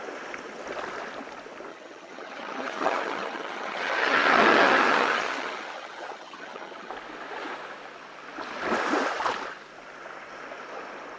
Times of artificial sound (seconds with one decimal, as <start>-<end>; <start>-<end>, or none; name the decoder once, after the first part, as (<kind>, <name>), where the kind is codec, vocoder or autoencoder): 1.7-6.9 (vocoder, HiFi-GAN)